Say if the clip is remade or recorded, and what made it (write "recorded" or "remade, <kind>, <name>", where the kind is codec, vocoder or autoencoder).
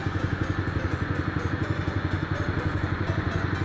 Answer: remade, vocoder, Vocos